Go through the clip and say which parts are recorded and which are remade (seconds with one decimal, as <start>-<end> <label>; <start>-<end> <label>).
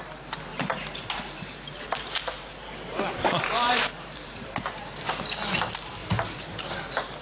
0.0-0.5 recorded; 0.5-4.8 remade; 4.8-6.0 recorded; 6.0-6.6 remade; 6.6-7.2 recorded